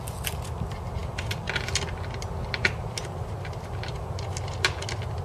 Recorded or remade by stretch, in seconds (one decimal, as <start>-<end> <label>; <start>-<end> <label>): 0.0-5.2 recorded